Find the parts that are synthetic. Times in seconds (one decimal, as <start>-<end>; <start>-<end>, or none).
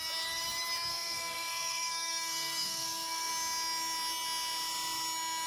0.9-3.3